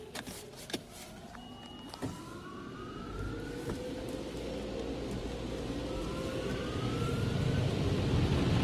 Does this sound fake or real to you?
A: real